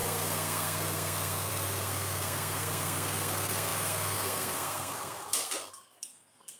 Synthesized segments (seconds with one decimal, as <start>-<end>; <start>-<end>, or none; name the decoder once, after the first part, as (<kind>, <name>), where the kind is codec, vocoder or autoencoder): 0.0-6.6 (codec, SNAC)